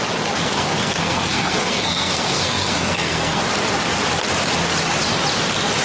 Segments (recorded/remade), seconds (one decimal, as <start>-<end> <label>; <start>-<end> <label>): 0.0-0.4 recorded; 0.4-3.4 remade; 3.4-5.8 recorded